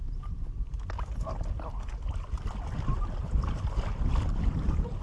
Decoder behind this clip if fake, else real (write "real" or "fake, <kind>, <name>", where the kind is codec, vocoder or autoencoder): real